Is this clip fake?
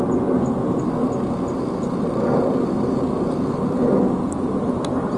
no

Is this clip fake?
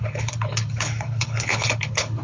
yes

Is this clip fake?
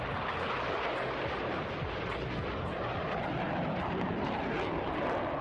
no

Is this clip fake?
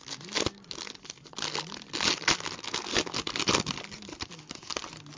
no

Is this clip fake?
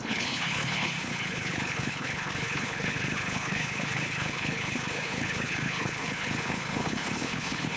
yes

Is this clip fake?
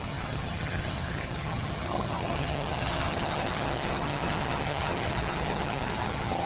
yes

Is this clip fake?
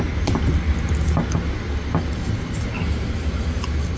no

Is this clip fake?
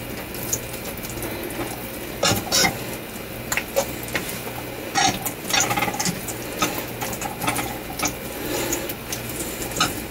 no